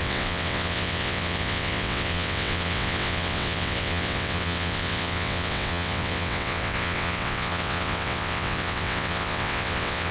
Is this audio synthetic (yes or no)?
yes